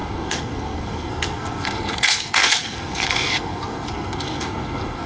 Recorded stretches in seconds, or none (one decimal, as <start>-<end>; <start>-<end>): none